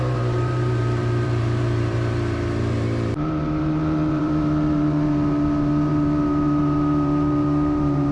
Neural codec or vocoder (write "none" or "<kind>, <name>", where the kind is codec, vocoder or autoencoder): vocoder, BigVGAN v2